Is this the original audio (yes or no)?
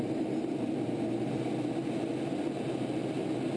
yes